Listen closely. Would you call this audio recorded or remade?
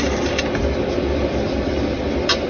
recorded